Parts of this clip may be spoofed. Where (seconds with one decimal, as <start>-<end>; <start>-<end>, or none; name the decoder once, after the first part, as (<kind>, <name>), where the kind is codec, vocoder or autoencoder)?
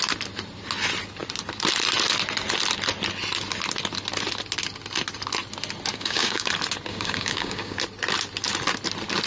5.9-6.5 (codec, DAC); 6.9-7.8